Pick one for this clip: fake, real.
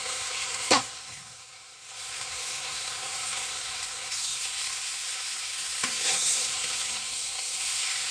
fake